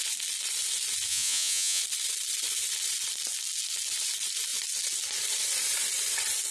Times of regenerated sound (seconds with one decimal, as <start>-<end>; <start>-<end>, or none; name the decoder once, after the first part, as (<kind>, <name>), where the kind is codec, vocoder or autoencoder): 1.1-1.8 (vocoder, Vocos)